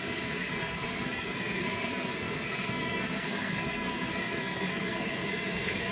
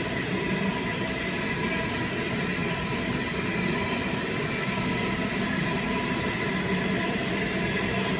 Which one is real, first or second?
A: second